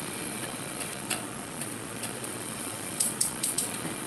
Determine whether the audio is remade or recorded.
remade